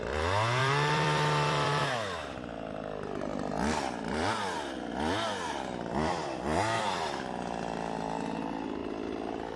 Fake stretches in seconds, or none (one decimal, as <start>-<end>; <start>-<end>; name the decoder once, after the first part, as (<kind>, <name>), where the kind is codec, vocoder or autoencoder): 0.6-1.8 (vocoder, BigVGAN v2); 8.8-9.6